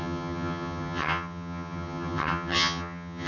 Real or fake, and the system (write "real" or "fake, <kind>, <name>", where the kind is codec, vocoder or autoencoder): fake, vocoder, HiFi-GAN